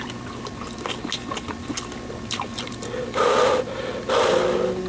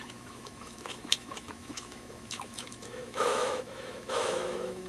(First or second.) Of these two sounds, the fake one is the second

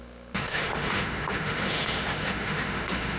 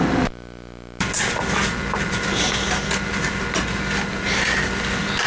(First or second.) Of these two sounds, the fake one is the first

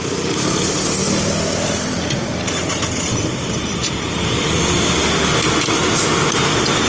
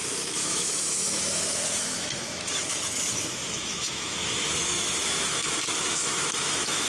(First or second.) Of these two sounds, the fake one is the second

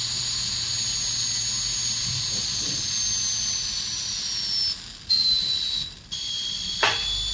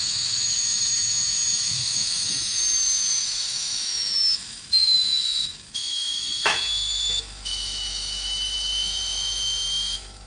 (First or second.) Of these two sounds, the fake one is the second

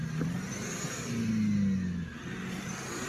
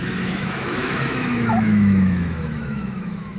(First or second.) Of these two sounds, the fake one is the second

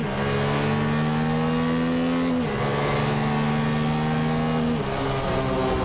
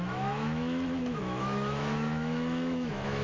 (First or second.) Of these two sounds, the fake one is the second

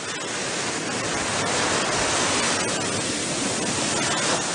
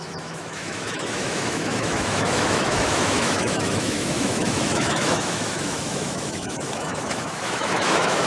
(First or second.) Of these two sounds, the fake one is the second